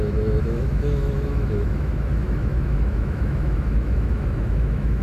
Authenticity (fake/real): fake